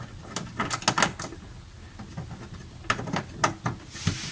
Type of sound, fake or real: real